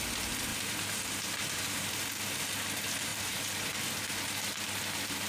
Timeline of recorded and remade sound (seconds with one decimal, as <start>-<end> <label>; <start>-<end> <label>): 0.0-0.5 recorded; 0.5-1.9 remade; 1.9-3.1 recorded; 3.1-3.7 remade; 3.7-5.3 recorded